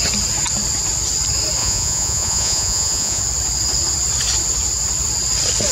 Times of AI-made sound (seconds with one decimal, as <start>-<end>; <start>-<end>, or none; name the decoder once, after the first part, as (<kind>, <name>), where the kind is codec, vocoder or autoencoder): 1.6-3.2 (vocoder, Vocos)